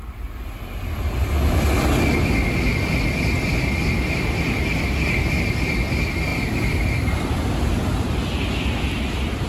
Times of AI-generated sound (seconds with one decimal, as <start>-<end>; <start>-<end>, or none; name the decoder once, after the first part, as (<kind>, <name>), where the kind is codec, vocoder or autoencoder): 6.3-7.5 (vocoder, BigVGAN v2)